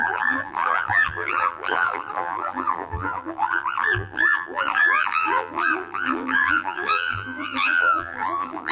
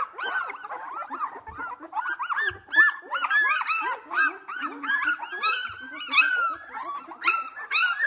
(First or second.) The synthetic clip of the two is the first